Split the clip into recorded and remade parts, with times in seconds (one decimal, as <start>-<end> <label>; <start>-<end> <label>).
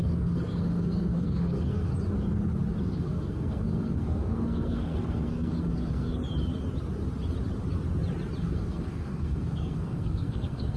0.0-1.9 remade; 1.9-2.8 recorded; 2.8-6.2 remade; 6.2-8.4 recorded; 8.4-10.8 remade